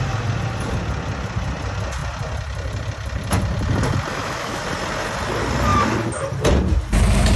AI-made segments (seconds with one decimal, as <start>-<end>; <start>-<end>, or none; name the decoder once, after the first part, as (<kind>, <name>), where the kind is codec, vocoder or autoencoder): 4.1-4.6 (autoencoder, DAC-VAE)